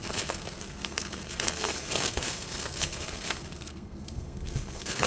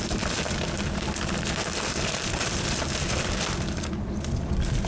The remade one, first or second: first